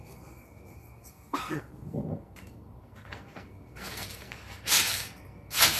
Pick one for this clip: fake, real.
fake